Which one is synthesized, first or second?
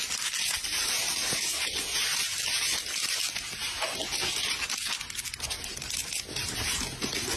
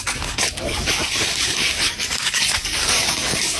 second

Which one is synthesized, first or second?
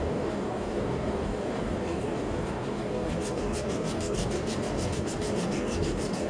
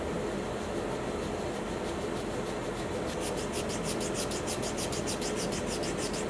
first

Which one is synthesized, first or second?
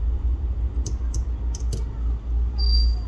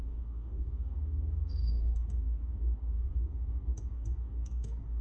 second